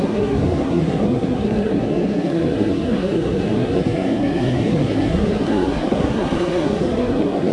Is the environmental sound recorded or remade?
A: remade